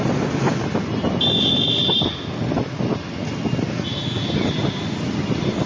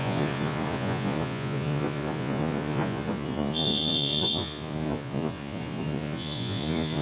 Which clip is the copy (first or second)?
second